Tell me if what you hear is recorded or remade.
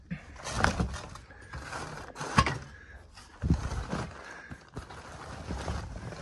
recorded